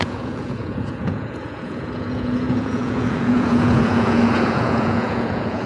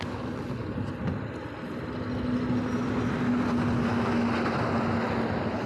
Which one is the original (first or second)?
second